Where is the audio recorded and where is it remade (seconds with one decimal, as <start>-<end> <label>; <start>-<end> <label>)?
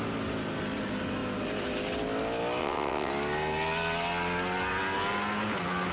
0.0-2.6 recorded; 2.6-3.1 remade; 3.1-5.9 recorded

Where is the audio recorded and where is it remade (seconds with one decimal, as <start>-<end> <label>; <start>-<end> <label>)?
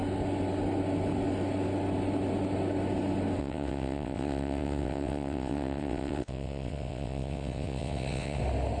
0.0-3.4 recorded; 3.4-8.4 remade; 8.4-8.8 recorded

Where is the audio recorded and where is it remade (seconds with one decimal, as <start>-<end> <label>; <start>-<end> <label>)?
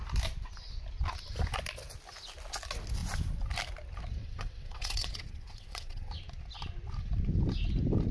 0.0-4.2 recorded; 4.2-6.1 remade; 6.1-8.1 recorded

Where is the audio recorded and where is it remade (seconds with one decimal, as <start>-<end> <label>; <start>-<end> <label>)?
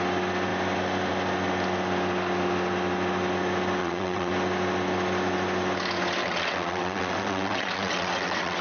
0.0-3.8 recorded; 3.8-4.3 remade; 4.3-6.2 recorded; 6.2-8.6 remade